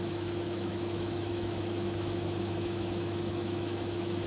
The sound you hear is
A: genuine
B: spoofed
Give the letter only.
B